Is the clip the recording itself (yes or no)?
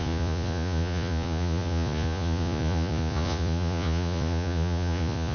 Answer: no